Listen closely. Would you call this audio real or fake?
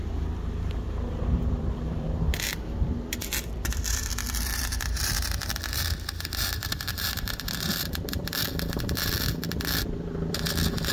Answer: fake